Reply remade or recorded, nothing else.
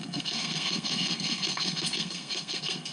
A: remade